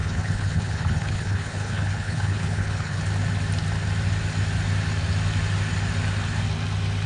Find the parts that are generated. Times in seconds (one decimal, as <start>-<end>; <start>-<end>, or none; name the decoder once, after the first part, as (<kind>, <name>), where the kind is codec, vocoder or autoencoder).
0.0-3.0 (codec, HILCodec)